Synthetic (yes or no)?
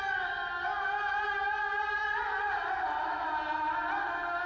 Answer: no